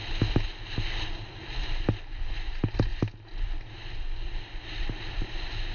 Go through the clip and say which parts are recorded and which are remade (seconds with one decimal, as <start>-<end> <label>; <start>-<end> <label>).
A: 0.0-5.7 recorded